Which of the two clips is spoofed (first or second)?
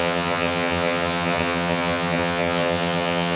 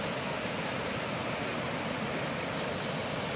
first